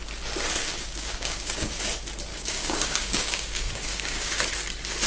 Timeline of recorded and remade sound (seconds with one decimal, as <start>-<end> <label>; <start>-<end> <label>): 0.0-0.6 recorded; 0.6-1.8 remade; 1.8-2.3 recorded; 2.3-4.5 remade; 4.5-5.1 recorded